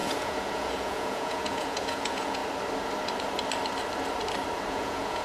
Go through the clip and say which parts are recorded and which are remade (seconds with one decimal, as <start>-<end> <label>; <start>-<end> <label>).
0.0-2.4 remade; 2.4-4.7 recorded; 4.7-5.2 remade